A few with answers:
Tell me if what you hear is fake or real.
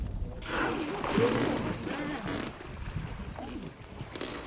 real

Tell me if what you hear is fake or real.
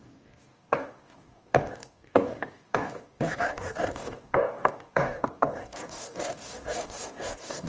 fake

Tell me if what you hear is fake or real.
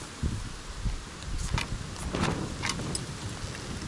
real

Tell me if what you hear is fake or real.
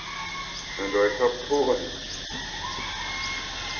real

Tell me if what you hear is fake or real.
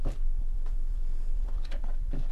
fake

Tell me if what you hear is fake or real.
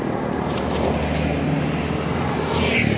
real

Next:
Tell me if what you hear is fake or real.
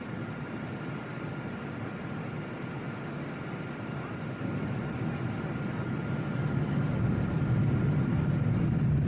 real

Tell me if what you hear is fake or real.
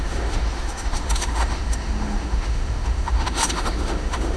fake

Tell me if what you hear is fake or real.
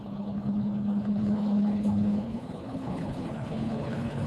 fake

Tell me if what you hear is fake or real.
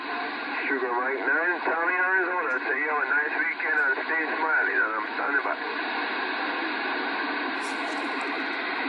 real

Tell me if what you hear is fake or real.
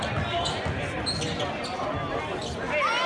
real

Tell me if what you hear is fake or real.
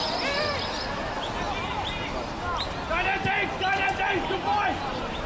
real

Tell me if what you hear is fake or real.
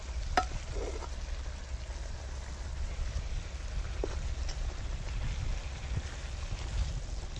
real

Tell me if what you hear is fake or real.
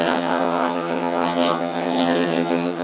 fake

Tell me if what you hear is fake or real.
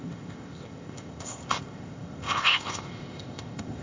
fake